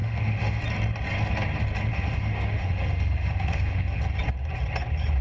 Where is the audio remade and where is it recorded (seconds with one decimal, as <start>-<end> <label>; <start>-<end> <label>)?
0.0-0.6 remade; 0.6-1.9 recorded; 1.9-4.0 remade; 4.0-5.2 recorded